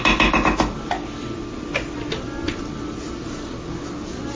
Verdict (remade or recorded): remade